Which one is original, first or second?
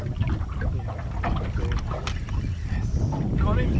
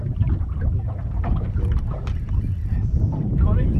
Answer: first